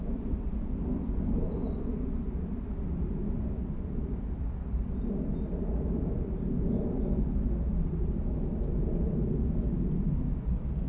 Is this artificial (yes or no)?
no